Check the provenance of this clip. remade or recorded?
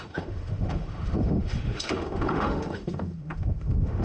remade